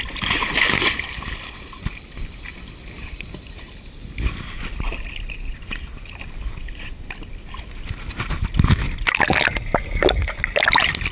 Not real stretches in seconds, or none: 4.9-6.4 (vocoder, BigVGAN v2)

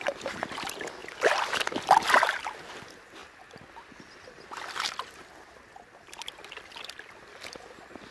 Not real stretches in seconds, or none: none